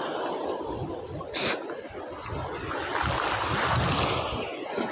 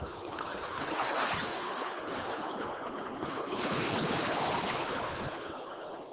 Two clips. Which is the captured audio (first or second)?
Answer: first